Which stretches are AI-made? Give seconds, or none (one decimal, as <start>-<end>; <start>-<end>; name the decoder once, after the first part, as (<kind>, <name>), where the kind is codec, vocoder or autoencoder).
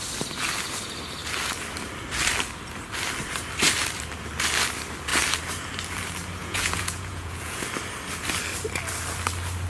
6.4-7.6 (vocoder, Vocos)